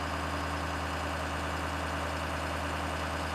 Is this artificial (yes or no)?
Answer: no